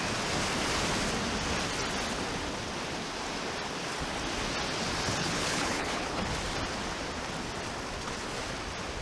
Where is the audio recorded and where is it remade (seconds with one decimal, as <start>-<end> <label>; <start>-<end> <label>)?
0.0-5.2 recorded; 5.2-6.2 remade; 6.2-9.0 recorded